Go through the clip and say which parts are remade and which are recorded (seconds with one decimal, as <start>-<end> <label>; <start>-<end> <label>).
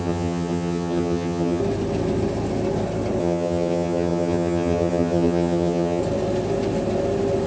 0.0-1.6 remade; 1.6-3.2 recorded; 3.2-6.0 remade; 6.0-7.5 recorded